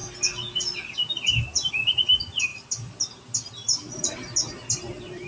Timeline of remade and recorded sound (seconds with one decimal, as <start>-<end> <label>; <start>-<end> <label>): 0.0-5.3 recorded